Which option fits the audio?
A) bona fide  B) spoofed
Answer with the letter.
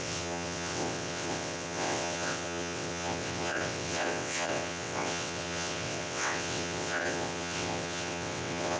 B